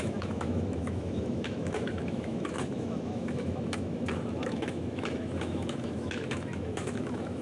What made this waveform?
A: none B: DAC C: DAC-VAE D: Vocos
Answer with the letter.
C